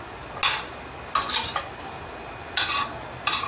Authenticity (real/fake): real